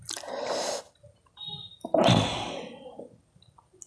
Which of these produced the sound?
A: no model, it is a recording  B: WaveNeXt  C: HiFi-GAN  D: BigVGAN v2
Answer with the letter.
A